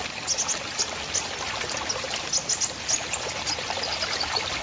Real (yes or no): yes